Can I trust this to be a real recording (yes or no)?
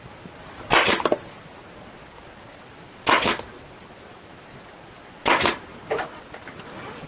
yes